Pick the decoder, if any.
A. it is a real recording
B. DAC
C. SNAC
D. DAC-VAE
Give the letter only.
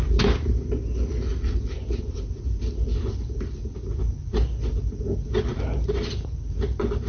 A